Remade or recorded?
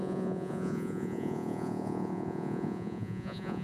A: remade